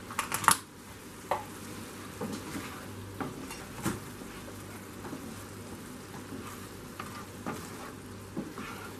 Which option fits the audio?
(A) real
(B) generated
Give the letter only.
A